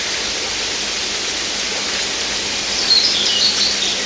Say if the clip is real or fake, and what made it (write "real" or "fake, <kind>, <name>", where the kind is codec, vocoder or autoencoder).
real